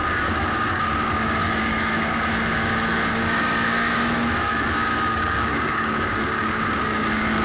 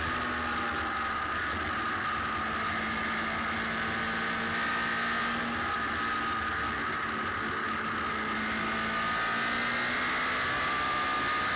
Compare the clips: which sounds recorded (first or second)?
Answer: second